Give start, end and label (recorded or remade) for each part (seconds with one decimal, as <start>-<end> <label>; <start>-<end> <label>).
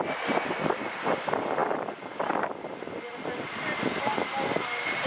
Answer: 0.0-5.1 recorded